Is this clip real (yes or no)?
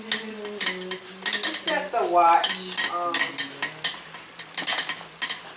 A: yes